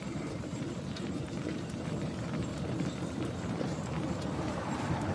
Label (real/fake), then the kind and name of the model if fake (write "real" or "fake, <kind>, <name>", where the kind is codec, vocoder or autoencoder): fake, vocoder, BigVGAN v2